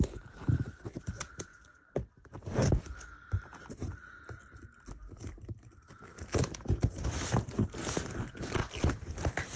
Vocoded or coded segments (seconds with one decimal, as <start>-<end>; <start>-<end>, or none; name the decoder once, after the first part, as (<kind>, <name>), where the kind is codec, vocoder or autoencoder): none